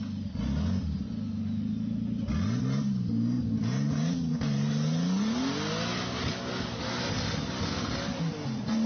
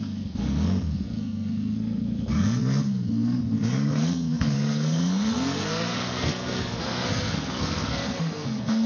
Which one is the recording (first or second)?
first